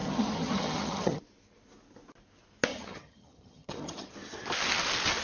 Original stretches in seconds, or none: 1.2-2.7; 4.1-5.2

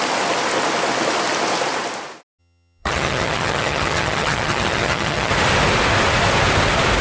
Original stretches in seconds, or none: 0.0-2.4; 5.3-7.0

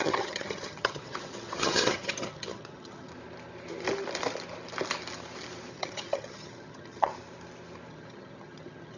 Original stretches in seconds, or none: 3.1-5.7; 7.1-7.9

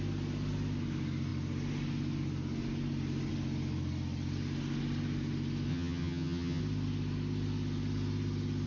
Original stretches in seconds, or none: 0.0-5.7; 6.6-8.7

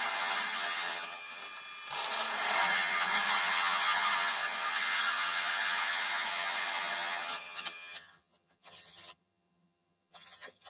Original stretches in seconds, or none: 1.4-2.6

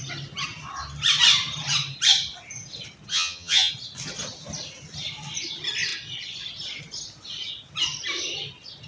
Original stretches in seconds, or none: 0.0-3.1; 3.7-8.9